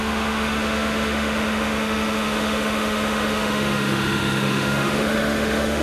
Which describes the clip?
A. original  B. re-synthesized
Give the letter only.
B